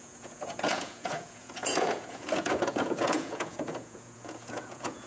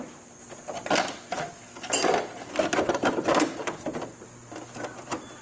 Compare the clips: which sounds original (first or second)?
second